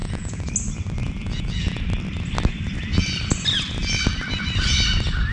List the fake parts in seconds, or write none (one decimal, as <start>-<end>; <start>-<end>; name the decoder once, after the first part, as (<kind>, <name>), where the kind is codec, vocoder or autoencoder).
0.0-0.5 (vocoder, Vocos); 1.0-1.8